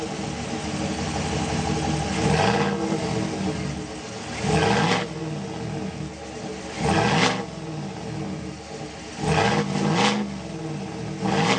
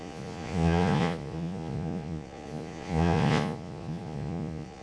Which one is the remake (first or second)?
second